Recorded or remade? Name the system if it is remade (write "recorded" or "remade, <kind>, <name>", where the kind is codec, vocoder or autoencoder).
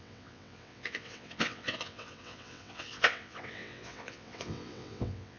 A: remade, vocoder, WaveNeXt